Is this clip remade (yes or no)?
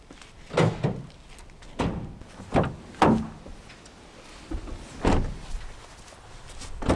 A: no